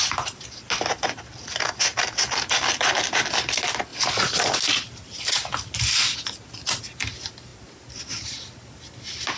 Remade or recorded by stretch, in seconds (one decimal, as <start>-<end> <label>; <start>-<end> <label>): 0.0-9.4 recorded